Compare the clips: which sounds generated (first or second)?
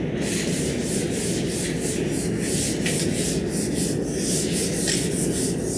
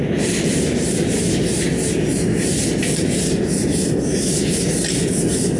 second